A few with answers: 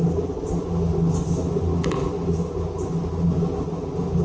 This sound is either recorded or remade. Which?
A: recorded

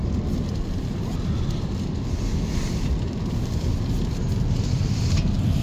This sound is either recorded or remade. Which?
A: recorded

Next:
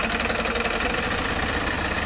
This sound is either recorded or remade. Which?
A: recorded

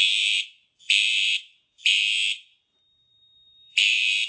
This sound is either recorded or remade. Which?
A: remade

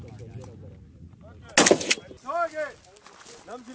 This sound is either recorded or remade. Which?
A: recorded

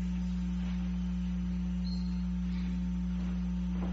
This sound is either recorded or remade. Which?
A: recorded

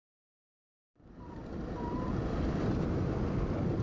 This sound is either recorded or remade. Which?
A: recorded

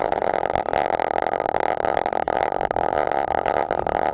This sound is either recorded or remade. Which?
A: recorded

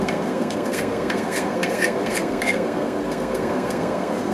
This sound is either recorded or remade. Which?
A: remade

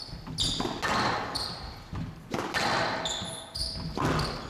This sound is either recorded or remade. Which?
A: recorded